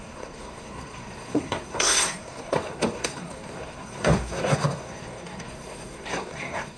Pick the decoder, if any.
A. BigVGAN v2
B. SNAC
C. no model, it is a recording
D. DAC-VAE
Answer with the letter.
B